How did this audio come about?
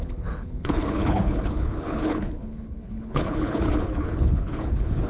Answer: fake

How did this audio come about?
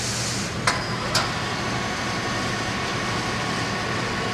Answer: real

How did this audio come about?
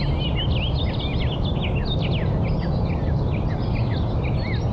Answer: real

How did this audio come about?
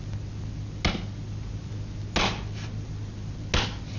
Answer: real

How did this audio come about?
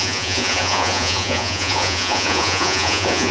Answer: fake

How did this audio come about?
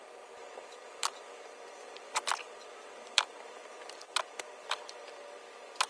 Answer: fake